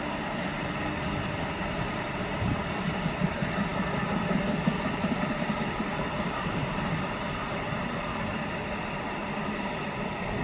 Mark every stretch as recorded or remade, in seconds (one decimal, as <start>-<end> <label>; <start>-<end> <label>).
0.0-10.4 remade